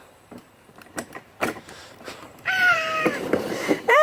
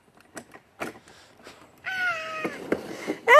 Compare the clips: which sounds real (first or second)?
second